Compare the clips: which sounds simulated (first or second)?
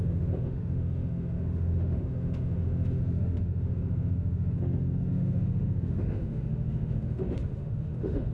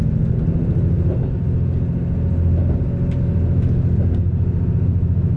first